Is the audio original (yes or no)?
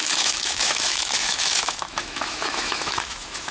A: no